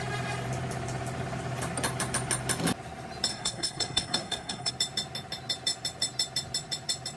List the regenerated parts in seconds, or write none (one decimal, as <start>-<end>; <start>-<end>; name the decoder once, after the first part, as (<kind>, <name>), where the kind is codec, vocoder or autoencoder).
3.3-4.7 (codec, SNAC)